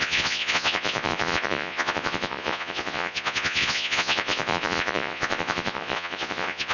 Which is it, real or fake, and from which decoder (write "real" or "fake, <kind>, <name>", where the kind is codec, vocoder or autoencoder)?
fake, vocoder, Vocos